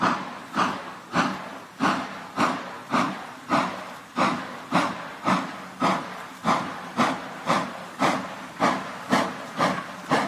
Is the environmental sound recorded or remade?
recorded